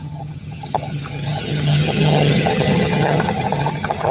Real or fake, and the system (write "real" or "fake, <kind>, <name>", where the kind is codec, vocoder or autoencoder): fake, vocoder, HiFi-GAN